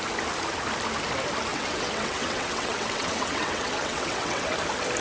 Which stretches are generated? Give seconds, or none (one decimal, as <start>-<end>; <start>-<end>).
1.5-4.5

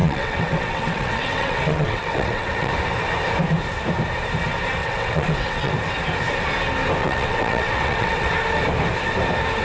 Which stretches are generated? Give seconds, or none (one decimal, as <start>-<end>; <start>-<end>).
0.0-2.7; 4.8-5.7; 7.0-8.3

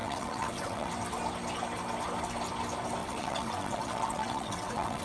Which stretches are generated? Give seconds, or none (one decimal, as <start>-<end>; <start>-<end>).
0.0-0.9; 3.0-5.0

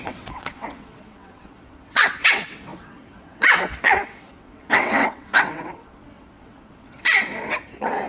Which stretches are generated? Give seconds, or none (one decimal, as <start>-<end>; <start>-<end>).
0.0-8.1

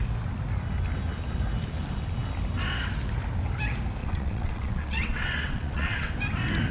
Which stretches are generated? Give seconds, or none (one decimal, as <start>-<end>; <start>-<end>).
4.0-6.1

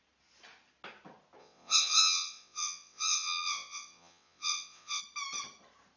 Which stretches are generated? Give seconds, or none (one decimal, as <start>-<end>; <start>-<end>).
1.4-5.0

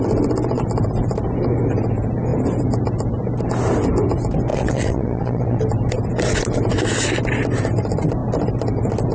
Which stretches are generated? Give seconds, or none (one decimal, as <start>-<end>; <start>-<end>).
4.5-5.6

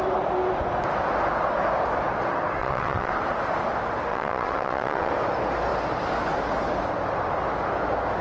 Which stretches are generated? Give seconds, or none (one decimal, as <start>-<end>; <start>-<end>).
2.6-3.1; 4.1-5.1